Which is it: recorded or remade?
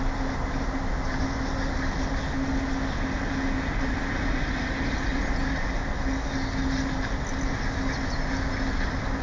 recorded